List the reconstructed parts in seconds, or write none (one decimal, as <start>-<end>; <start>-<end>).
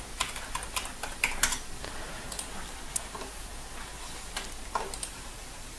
5.0-5.8